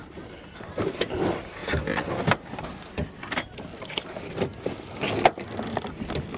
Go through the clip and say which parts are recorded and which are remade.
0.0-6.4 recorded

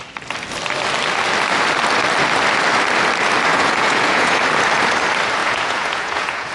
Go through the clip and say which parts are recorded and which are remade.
0.0-3.5 recorded; 3.5-4.4 remade; 4.4-5.4 recorded; 5.4-6.5 remade

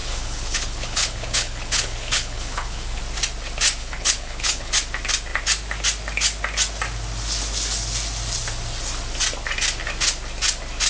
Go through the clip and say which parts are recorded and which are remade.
0.0-3.0 remade; 3.0-3.8 recorded; 3.8-4.7 remade; 4.7-10.9 recorded

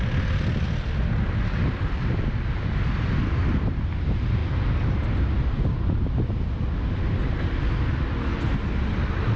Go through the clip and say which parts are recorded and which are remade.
0.0-9.4 recorded

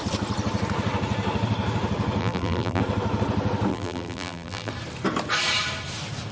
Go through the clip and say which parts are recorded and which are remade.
0.0-2.2 recorded; 2.2-2.8 remade; 2.8-3.7 recorded; 3.7-4.7 remade; 4.7-6.3 recorded

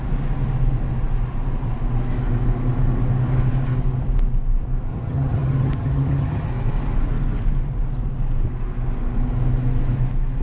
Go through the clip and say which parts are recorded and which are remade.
0.0-4.9 recorded; 4.9-6.5 remade; 6.5-10.4 recorded

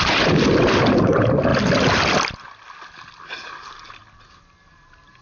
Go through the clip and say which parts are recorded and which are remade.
0.0-5.2 recorded

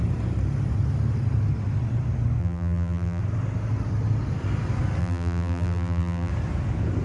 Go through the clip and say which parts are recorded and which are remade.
0.0-2.4 recorded; 2.4-3.2 remade; 3.2-5.0 recorded; 5.0-6.3 remade; 6.3-7.0 recorded